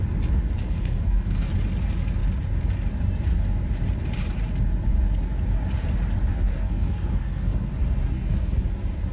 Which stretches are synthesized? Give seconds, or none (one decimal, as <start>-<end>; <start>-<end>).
0.6-1.5; 6.3-7.7; 8.1-8.6